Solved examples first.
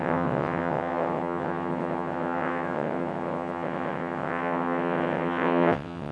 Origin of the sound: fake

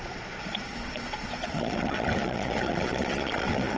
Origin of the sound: fake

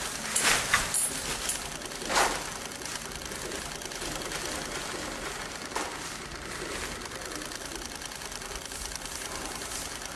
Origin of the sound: real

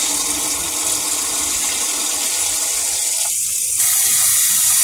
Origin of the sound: real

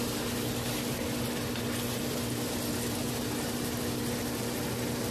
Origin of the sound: real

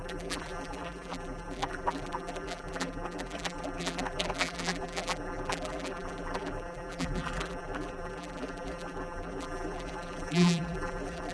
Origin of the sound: fake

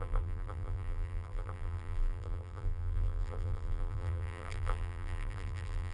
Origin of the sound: fake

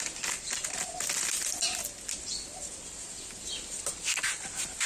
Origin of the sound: real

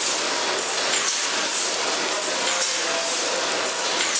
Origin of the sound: real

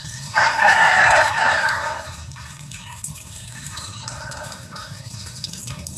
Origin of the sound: fake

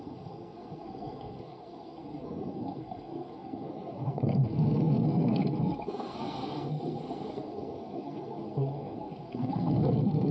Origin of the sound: fake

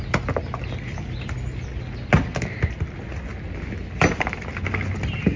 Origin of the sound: real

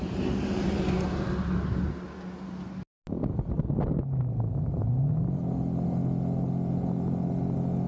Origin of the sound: real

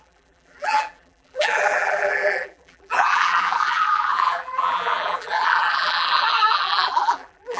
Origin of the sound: fake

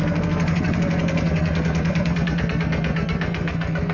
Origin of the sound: fake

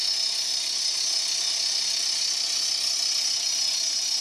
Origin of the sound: real